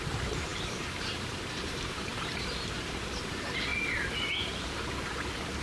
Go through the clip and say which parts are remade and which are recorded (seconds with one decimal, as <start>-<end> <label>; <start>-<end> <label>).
0.0-3.7 remade; 3.7-4.6 recorded; 4.6-5.6 remade